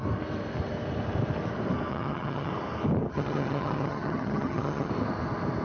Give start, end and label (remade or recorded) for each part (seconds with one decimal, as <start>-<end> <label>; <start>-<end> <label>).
0.0-1.9 recorded; 1.9-2.5 remade; 2.5-3.0 recorded; 3.0-4.9 remade; 4.9-5.6 recorded